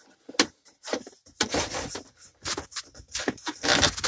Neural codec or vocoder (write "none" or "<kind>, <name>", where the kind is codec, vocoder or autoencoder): none